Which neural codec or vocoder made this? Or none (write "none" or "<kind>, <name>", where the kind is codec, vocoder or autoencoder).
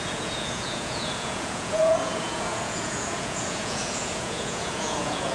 vocoder, Vocos